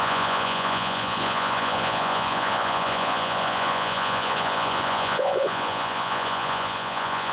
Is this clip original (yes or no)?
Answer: no